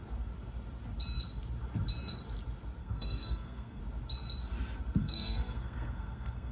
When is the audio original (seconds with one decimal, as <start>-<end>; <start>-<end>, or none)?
0.0-2.8; 3.8-5.0

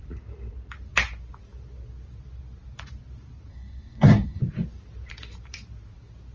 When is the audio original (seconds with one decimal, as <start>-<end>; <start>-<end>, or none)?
0.0-3.5; 4.4-6.3

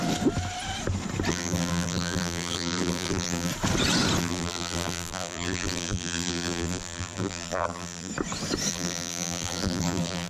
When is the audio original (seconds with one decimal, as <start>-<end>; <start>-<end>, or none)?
0.0-1.3; 3.5-4.2; 8.1-8.7

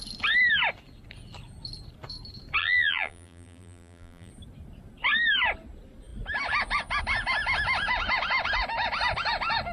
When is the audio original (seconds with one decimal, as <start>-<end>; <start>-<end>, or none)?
0.0-2.6; 4.3-9.7

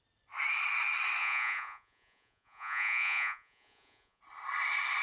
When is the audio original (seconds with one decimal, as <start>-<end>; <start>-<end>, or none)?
0.0-1.2; 4.2-5.0